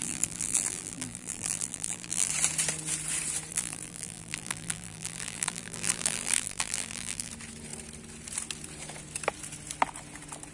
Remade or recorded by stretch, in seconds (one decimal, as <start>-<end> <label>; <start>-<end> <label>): 0.0-2.3 remade; 2.3-3.5 recorded; 3.5-7.3 remade; 7.3-10.5 recorded